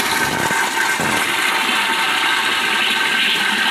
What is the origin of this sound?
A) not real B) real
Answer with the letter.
B